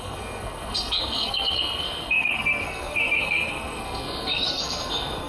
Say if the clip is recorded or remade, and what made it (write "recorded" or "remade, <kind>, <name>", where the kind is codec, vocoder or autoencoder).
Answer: remade, codec, SNAC